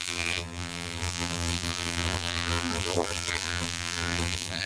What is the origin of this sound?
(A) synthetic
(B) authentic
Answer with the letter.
A